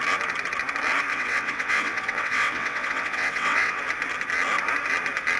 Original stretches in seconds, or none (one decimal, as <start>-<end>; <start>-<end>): 0.0-1.1; 3.8-5.4